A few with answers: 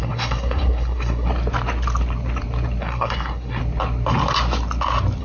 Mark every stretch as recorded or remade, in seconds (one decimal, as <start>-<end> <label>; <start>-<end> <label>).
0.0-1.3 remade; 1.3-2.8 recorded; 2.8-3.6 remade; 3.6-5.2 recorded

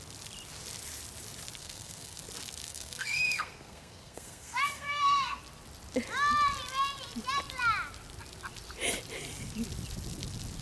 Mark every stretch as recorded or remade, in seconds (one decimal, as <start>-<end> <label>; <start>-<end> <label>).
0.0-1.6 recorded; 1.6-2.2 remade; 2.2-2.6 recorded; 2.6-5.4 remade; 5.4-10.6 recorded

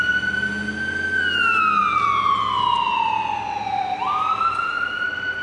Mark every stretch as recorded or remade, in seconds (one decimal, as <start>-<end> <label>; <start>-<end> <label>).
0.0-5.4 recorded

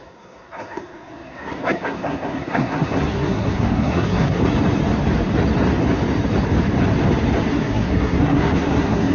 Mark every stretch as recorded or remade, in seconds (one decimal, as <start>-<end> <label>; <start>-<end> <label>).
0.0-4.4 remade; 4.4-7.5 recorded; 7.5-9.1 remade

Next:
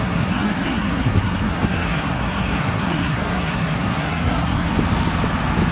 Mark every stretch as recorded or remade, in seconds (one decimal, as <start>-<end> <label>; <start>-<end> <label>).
0.0-4.7 remade; 4.7-5.7 recorded